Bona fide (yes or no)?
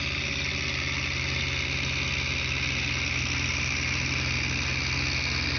yes